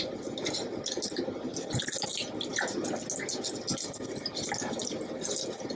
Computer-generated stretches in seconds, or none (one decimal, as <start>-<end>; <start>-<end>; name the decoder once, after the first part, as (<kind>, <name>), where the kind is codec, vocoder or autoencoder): none